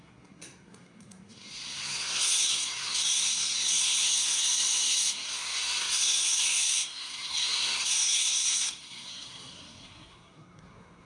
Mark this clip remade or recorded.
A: remade